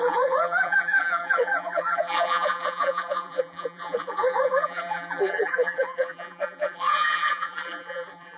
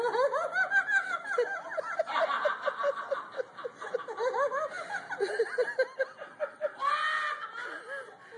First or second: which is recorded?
second